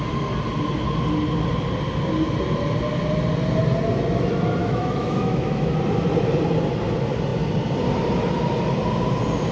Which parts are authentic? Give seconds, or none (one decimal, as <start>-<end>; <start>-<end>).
0.0-4.6; 5.7-9.5